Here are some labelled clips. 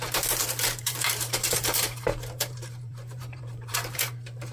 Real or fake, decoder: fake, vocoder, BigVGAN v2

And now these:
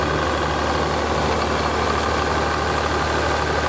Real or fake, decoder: real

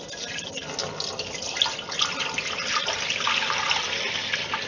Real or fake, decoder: real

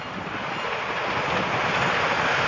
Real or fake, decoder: real